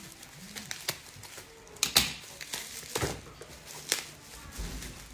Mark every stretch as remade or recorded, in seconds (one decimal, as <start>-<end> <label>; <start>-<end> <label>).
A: 0.0-5.1 recorded